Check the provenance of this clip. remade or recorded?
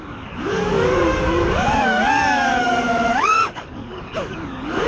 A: remade